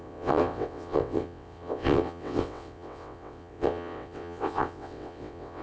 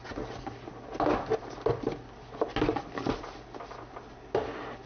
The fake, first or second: first